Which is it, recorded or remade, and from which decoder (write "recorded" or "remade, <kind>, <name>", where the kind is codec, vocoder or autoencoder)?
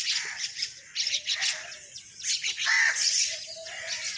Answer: recorded